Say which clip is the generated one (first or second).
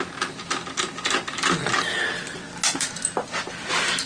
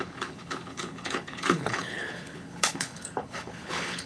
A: second